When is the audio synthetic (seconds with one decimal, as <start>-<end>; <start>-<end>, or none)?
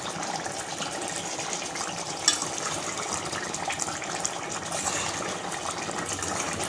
none